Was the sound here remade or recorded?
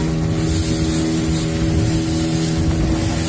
recorded